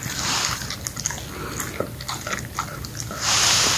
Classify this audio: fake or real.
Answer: real